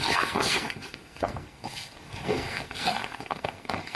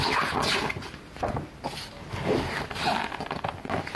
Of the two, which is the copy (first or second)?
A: first